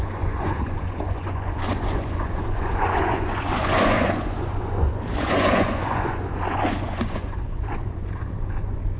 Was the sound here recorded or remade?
remade